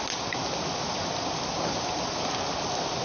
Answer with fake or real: real